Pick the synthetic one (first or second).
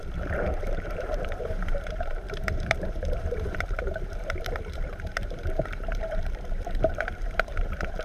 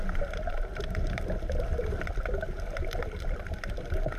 first